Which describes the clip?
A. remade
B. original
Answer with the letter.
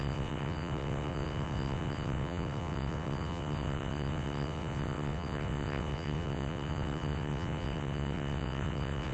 A